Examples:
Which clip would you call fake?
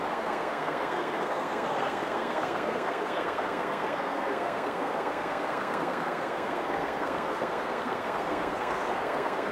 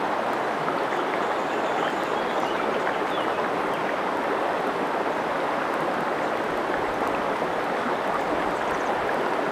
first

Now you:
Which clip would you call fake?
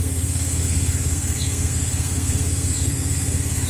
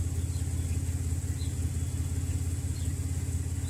first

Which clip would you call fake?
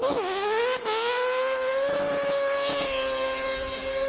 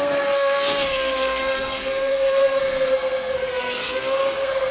second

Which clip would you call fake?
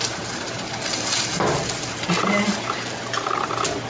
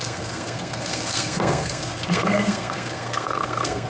second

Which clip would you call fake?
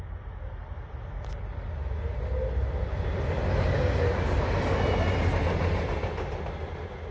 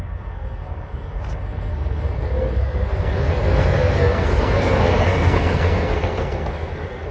second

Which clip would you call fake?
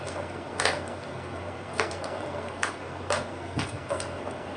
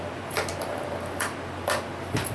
first